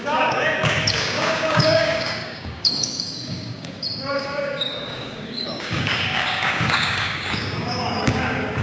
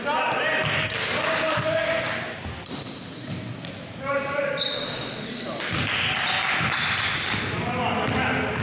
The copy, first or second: first